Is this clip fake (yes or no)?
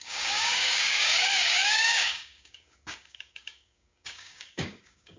yes